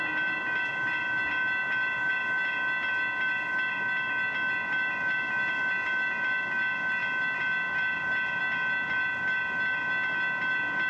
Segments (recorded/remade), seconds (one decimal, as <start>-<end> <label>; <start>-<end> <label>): 0.0-10.9 recorded